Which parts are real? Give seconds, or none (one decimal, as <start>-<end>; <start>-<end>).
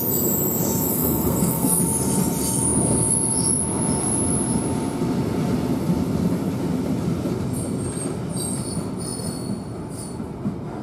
0.0-0.9; 1.8-10.8